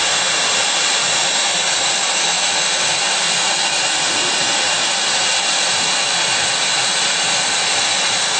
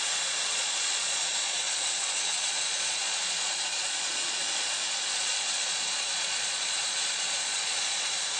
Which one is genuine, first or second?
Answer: first